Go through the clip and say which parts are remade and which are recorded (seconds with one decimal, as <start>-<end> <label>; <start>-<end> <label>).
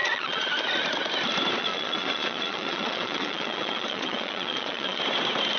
0.0-0.5 remade; 0.5-1.6 recorded; 1.6-5.0 remade; 5.0-5.6 recorded